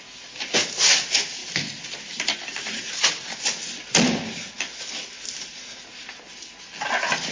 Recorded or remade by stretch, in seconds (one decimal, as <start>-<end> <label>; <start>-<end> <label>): 0.0-7.3 recorded